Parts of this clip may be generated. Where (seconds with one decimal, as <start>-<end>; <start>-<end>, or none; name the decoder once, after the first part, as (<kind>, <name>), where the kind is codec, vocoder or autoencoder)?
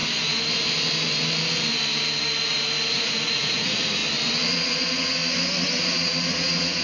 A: 2.9-4.0 (vocoder, Vocos); 4.5-5.2; 5.8-6.8